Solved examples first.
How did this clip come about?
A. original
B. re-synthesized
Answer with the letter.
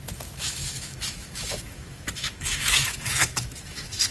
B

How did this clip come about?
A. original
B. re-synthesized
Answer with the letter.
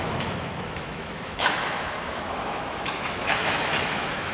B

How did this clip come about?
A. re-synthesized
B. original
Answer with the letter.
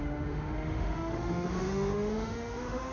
A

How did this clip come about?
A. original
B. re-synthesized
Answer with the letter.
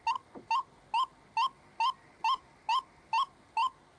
A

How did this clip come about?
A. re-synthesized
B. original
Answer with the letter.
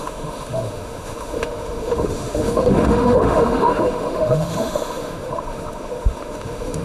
A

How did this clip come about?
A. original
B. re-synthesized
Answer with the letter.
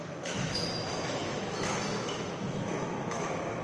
B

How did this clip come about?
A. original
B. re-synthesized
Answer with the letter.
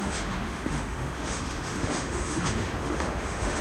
B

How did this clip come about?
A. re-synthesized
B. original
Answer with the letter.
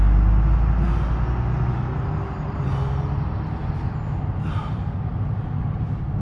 B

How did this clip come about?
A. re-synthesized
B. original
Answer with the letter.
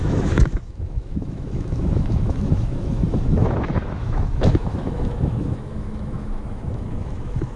A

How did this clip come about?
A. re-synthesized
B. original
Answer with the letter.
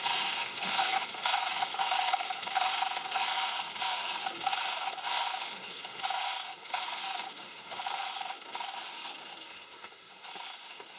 A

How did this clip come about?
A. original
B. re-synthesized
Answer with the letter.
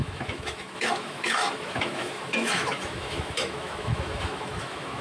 B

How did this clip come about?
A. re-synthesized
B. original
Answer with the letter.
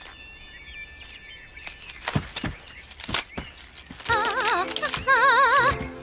B